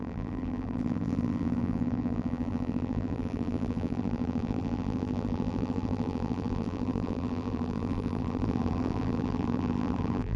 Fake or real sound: fake